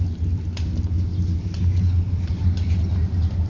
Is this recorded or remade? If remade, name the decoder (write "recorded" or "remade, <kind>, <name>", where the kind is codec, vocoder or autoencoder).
recorded